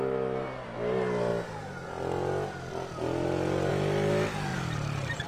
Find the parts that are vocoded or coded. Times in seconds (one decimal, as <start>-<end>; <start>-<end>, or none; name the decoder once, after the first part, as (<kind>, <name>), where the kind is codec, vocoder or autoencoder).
4.5-5.3 (vocoder, BigVGAN v2)